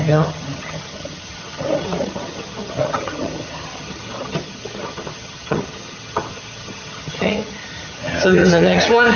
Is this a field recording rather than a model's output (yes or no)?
no